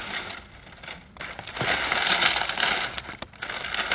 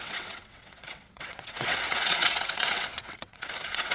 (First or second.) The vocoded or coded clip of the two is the second